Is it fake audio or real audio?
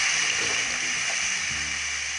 real